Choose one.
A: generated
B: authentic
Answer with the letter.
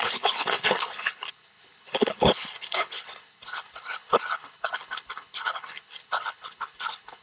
A